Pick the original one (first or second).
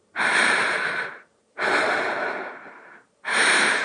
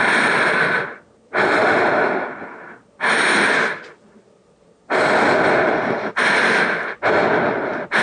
second